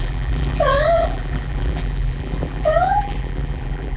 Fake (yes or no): yes